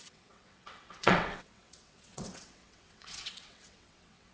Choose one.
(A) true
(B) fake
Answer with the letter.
B